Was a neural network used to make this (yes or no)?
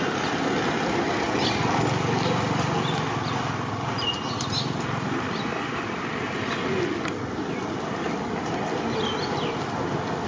no